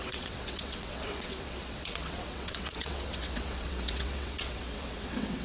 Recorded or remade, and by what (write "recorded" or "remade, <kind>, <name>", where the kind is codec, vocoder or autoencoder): remade, vocoder, WaveNeXt